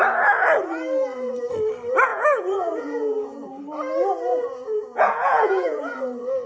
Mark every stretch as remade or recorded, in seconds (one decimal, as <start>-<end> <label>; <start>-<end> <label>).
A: 0.0-2.1 recorded; 2.1-3.6 remade; 3.6-4.3 recorded; 4.3-5.9 remade; 5.9-6.5 recorded